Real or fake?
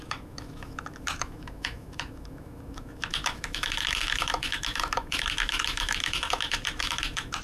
fake